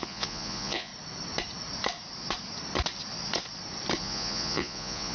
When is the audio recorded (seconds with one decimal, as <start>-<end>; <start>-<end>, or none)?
0.9-4.0